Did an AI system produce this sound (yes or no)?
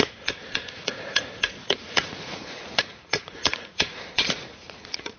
yes